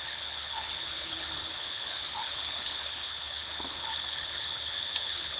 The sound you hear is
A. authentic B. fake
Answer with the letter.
B